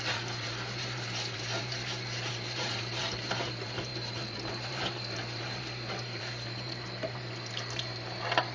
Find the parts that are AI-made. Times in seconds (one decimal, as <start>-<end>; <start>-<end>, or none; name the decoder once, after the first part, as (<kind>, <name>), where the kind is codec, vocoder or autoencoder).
0.0-8.5 (vocoder, BigVGAN v2)